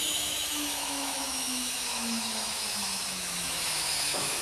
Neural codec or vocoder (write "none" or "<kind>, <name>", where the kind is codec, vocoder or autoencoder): autoencoder, DAC-VAE